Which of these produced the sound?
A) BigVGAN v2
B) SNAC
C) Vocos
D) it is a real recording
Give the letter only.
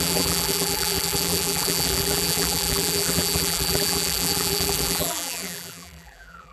A